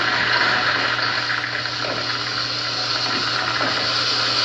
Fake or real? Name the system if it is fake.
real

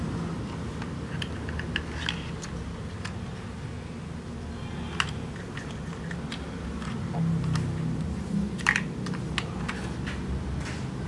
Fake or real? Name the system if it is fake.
real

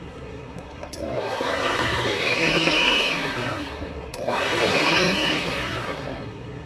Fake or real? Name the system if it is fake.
fake, codec, SNAC